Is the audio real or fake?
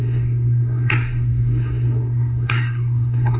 fake